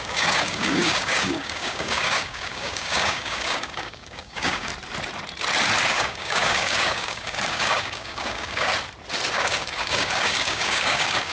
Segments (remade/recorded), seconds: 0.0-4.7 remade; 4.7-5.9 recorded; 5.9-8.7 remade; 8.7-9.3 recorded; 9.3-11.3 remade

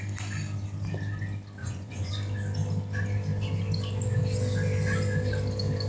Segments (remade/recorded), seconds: 0.0-1.6 recorded; 1.6-2.1 remade; 2.1-5.9 recorded

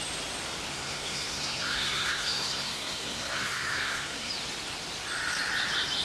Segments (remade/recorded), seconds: 0.0-0.7 recorded; 0.7-4.3 remade; 4.3-6.0 recorded

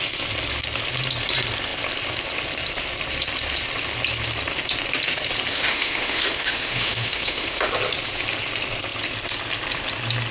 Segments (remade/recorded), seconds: 0.0-5.5 recorded; 5.5-7.7 remade; 7.7-10.3 recorded

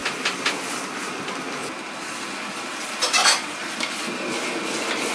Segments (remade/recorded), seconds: 0.0-5.1 recorded